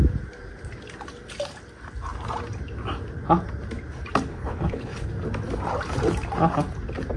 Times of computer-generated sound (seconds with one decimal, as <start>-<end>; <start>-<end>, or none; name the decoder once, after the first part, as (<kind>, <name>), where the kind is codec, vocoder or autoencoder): 4.3-5.1 (codec, HILCodec)

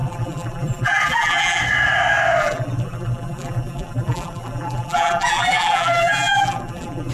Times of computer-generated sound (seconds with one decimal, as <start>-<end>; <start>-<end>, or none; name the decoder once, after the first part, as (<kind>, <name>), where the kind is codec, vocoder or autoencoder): 0.0-1.6 (vocoder, BigVGAN v2); 2.4-7.1

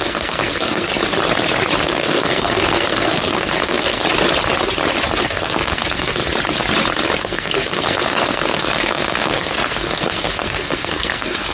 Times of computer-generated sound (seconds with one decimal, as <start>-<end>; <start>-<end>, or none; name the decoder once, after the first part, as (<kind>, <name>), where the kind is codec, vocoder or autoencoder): 0.0-0.9 (codec, SNAC); 1.8-4.0; 5.2-6.2; 7.2-11.5

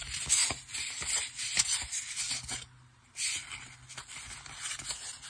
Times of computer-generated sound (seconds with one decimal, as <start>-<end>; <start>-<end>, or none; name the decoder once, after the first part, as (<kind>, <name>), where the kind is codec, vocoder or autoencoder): none

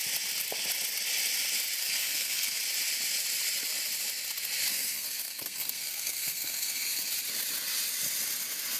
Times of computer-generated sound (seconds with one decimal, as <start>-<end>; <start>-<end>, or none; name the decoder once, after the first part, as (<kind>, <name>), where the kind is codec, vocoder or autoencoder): 1.8-2.6 (codec, SNAC); 4.7-7.1

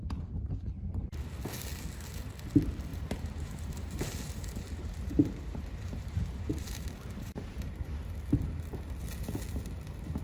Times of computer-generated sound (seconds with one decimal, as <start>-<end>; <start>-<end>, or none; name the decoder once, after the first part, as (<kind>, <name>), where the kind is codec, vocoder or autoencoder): 2.9-8.1 (vocoder, BigVGAN v2)